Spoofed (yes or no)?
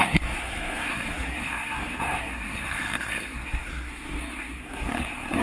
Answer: yes